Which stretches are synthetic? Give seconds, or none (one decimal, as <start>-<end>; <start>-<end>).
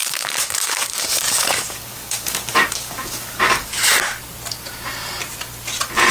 0.0-3.7